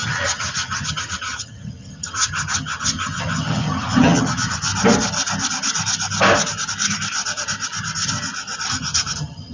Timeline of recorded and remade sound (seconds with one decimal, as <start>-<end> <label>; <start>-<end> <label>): 0.0-4.7 remade; 4.7-8.7 recorded; 8.7-9.5 remade